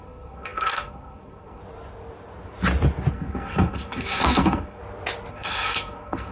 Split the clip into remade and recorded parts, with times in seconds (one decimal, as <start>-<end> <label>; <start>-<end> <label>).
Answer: 0.0-1.6 remade; 1.6-3.1 recorded; 3.1-4.8 remade; 4.8-5.3 recorded; 5.3-6.3 remade